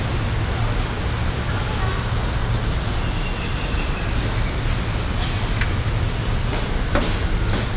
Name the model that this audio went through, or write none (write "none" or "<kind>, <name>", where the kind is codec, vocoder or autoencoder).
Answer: none